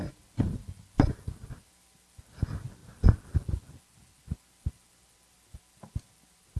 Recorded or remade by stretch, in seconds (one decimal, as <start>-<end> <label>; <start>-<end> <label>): 0.0-6.6 recorded